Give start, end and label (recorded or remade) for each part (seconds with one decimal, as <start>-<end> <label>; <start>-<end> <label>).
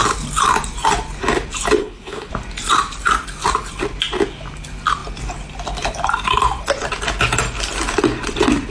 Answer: 0.0-1.8 recorded; 1.8-2.3 remade; 2.3-8.7 recorded